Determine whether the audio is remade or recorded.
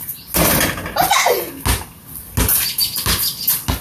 recorded